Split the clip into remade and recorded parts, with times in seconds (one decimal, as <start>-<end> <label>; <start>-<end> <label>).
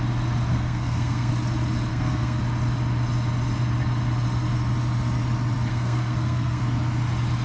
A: 0.0-0.5 recorded; 0.5-1.3 remade; 1.3-1.9 recorded; 1.9-2.4 remade; 2.4-5.7 recorded; 5.7-6.6 remade; 6.6-7.4 recorded